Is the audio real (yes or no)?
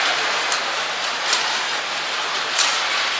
yes